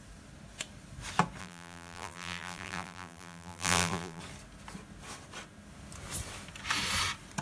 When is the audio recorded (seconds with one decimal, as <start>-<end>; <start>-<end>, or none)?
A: 0.0-1.4; 4.2-7.4